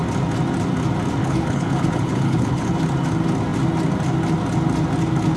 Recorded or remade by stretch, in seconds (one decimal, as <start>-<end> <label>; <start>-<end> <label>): 0.0-1.2 recorded; 1.2-2.7 remade; 2.7-5.4 recorded